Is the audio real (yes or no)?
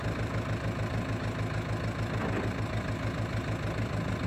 yes